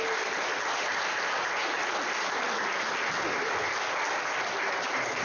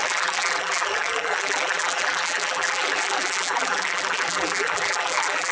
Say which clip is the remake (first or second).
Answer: second